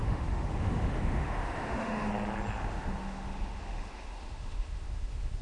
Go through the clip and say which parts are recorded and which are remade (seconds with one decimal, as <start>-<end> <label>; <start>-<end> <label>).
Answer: 0.0-2.1 remade; 2.1-2.6 recorded; 2.6-5.4 remade